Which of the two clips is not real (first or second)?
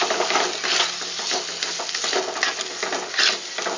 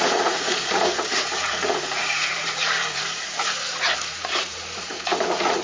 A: second